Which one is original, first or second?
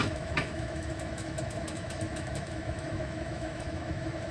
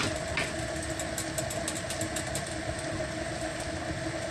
second